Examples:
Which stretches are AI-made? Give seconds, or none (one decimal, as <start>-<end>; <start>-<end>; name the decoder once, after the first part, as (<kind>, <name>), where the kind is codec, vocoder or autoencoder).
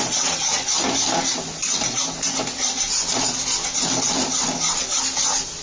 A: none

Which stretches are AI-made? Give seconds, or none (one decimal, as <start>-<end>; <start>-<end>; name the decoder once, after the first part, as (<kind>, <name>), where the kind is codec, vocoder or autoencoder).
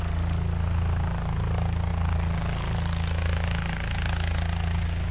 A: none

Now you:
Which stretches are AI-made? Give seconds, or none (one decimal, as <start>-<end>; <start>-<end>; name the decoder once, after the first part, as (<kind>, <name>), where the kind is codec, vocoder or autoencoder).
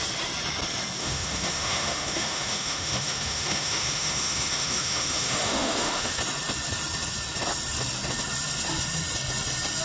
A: 1.0-6.2 (autoencoder, DAC-VAE)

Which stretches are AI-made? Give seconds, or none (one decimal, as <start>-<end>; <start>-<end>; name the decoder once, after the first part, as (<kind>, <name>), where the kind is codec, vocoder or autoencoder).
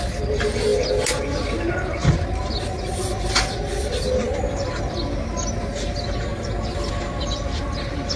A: none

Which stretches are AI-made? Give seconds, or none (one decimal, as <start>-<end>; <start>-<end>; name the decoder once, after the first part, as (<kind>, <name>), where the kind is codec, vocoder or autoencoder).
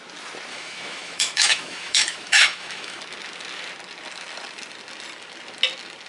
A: 0.5-3.0 (autoencoder, DAC-VAE)